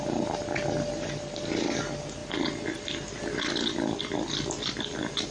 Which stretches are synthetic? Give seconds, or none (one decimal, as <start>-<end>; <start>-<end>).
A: none